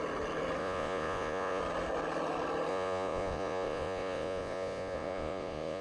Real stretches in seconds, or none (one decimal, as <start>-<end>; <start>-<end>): 0.0-0.6; 1.6-2.7